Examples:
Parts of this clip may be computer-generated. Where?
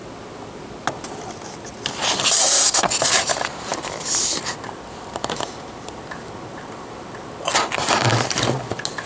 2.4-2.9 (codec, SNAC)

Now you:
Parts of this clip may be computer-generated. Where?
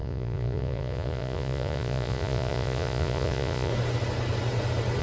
0.0-3.7 (vocoder, Vocos)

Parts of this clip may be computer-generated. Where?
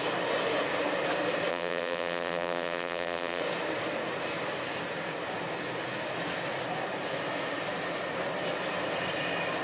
1.5-3.4 (vocoder, BigVGAN v2)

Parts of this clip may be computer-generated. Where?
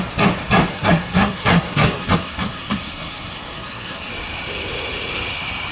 0.7-4.1 (codec, SNAC)